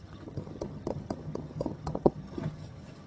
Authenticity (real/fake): fake